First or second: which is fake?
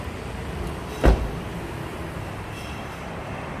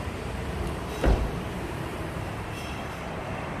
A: second